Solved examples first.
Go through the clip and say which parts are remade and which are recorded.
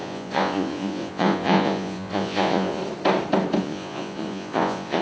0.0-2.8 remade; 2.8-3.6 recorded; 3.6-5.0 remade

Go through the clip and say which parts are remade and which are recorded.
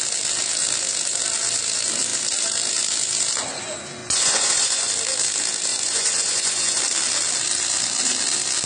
0.0-4.0 recorded; 4.0-4.9 remade; 4.9-5.7 recorded; 5.7-6.8 remade; 6.8-8.7 recorded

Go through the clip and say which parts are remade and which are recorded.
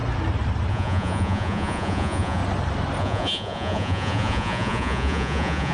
0.0-0.7 recorded; 0.7-2.4 remade; 2.4-3.0 recorded; 3.0-5.7 remade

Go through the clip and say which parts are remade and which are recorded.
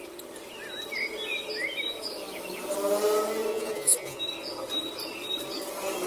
0.0-3.5 recorded; 3.5-4.2 remade; 4.2-6.1 recorded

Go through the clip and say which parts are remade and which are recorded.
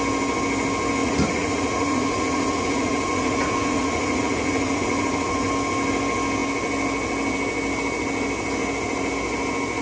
0.0-1.0 recorded; 1.0-5.5 remade; 5.5-9.8 recorded